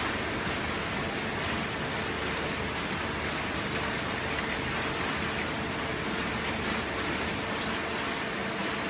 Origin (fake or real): real